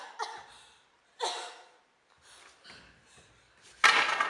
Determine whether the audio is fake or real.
real